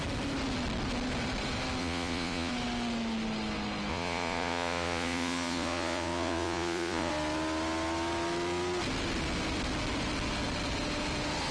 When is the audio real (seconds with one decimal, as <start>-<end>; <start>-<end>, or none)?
0.0-1.8; 2.5-3.9; 7.1-11.5